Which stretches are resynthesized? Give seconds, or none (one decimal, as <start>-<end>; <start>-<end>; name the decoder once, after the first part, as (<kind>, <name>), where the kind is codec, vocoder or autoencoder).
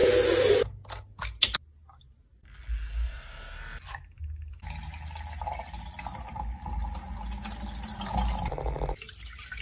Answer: none